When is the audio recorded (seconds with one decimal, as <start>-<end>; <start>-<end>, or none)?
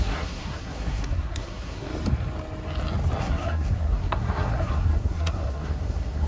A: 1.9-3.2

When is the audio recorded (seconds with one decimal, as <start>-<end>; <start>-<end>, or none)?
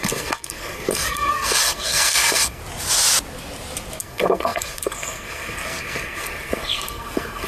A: 2.6-4.0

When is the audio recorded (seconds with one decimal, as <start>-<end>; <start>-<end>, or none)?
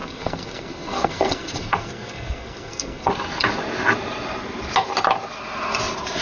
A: 3.1-6.2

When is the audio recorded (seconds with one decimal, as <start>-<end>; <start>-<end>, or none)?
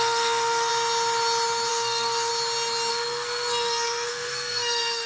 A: 0.7-1.7; 2.3-2.9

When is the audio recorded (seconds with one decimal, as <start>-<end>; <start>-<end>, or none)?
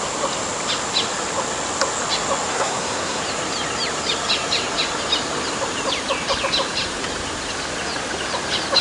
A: 0.0-2.5; 3.2-8.8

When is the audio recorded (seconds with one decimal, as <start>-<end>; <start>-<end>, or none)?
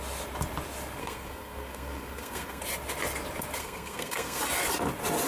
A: 0.0-1.0; 2.6-3.6; 4.4-5.3